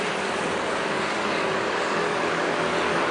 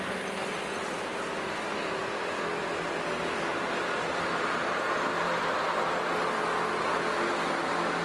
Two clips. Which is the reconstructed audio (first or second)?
first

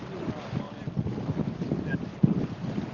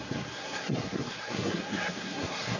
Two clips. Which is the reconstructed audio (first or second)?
second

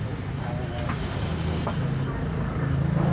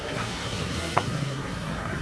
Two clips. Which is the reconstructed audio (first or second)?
second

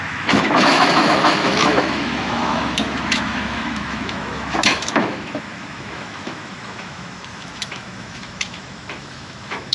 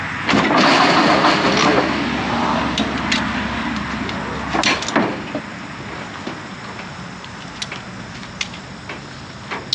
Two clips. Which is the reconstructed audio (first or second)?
first